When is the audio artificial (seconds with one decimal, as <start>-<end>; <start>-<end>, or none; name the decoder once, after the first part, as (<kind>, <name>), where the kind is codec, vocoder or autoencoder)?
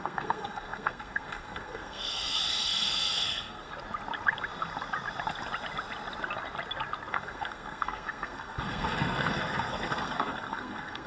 0.0-3.7 (codec, SNAC); 7.1-11.1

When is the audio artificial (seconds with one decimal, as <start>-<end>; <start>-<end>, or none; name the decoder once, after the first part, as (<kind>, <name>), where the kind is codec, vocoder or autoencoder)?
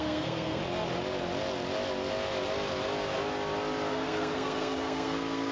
0.0-0.6 (codec, SNAC); 3.9-5.5